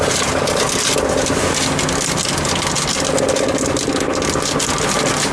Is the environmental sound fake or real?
real